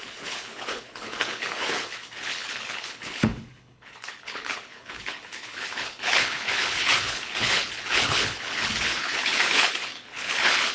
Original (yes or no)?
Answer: no